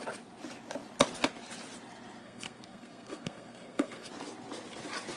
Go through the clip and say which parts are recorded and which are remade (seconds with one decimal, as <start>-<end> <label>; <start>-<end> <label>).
0.0-2.2 recorded; 2.2-4.1 remade; 4.1-5.2 recorded